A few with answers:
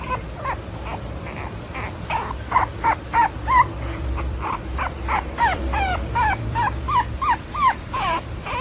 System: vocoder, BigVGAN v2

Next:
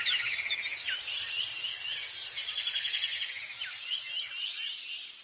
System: none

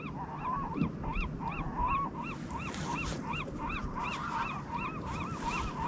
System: none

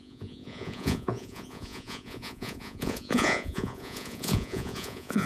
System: vocoder, Vocos